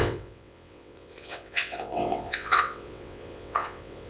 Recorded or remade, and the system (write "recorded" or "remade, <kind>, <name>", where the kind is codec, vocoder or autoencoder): remade, vocoder, WaveNeXt